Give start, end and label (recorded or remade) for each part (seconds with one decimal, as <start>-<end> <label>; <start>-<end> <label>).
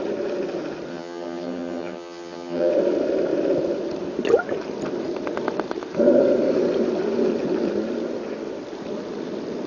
0.0-0.9 recorded; 0.9-2.7 remade; 2.7-9.7 recorded